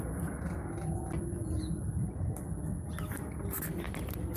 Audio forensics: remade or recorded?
recorded